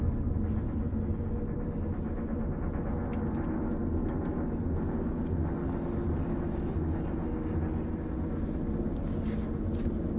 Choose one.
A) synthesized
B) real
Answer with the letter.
B